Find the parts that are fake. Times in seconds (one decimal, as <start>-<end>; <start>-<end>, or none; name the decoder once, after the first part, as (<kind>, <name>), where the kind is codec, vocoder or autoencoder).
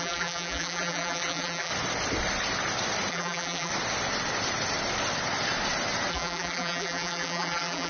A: 0.0-1.7 (vocoder, BigVGAN v2); 3.1-3.7; 6.1-7.9